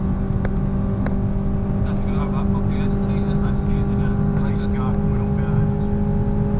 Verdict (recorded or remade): recorded